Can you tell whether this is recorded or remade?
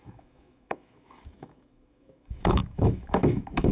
remade